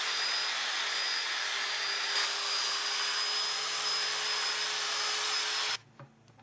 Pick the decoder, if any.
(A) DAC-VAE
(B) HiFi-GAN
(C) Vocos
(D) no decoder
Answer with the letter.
D